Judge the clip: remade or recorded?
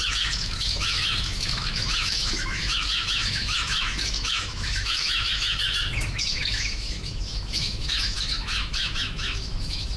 remade